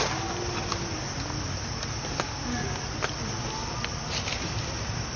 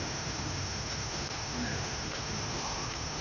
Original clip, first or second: first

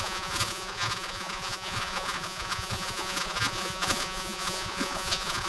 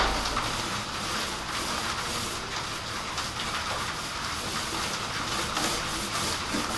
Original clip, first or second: second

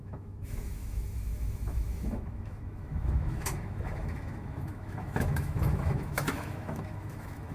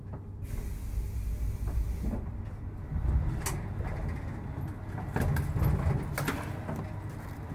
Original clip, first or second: second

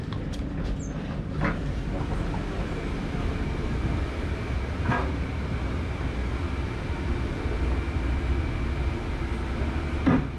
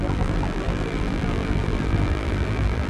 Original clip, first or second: first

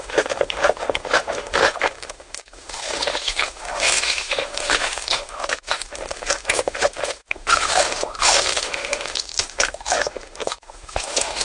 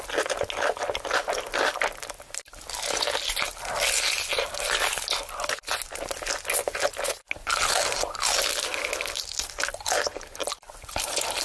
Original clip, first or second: second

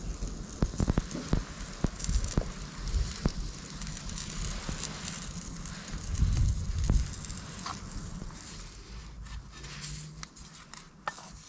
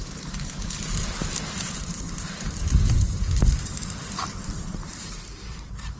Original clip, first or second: first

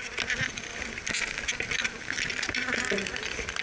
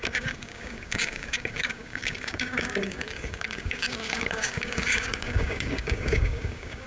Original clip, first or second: first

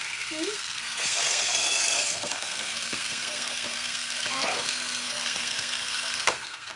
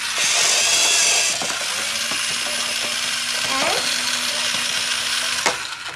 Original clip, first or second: second